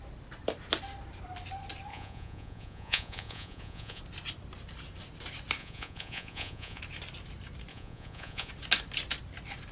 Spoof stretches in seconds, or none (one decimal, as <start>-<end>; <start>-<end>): 1.9-4.0; 5.6-6.8; 7.7-8.5